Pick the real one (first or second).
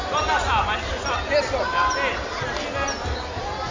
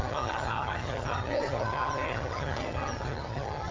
first